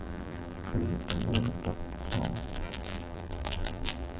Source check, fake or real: fake